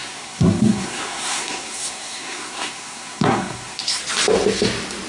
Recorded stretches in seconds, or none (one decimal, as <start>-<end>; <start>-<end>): 4.0-5.1